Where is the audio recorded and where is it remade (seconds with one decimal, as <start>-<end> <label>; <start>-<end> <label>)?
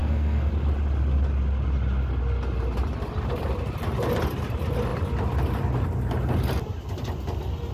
0.0-0.5 remade; 0.5-7.7 recorded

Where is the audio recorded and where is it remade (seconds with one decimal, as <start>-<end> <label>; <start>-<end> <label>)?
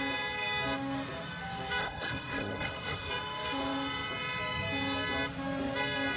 0.0-1.8 recorded; 1.8-3.1 remade; 3.1-6.2 recorded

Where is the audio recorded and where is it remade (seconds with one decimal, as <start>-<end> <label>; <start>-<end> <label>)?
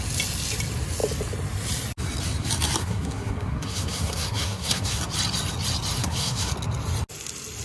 0.0-2.8 recorded; 2.8-5.0 remade; 5.0-6.0 recorded; 6.0-6.5 remade; 6.5-7.6 recorded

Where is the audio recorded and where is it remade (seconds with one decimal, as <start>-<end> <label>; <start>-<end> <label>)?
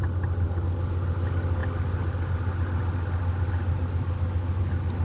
0.0-5.0 recorded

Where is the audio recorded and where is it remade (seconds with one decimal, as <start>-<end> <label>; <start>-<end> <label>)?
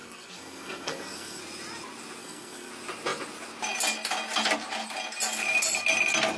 0.0-1.4 remade; 1.4-2.2 recorded; 2.2-2.7 remade; 2.7-6.4 recorded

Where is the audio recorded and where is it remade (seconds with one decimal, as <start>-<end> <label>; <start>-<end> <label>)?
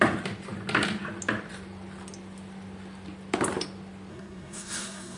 0.0-4.1 recorded; 4.1-5.2 remade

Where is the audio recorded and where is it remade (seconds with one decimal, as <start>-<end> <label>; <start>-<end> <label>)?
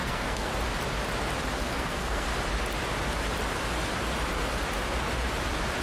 0.0-0.5 remade; 0.5-1.5 recorded; 1.5-2.3 remade; 2.3-5.8 recorded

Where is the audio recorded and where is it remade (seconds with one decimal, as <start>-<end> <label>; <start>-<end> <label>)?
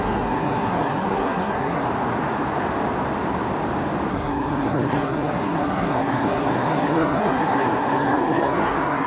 0.0-1.8 remade; 1.8-4.1 recorded; 4.1-9.1 remade